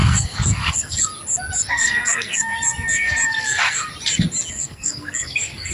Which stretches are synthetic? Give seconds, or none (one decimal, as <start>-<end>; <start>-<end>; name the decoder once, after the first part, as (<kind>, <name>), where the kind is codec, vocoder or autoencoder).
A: 0.0-1.1 (codec, SNAC); 1.7-3.9; 4.5-5.7

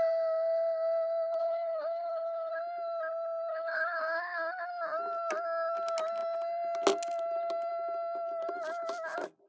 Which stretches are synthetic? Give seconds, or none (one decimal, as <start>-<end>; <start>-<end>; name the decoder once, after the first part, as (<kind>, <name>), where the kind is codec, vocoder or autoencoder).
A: 1.4-2.5 (codec, HILCodec); 3.5-4.7